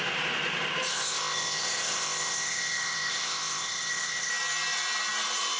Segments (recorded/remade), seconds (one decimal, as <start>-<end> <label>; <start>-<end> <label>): 0.0-0.9 recorded; 0.9-4.3 remade; 4.3-5.6 recorded